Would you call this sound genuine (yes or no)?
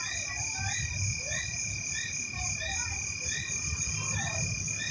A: yes